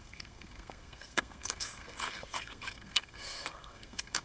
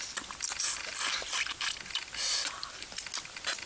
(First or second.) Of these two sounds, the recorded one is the second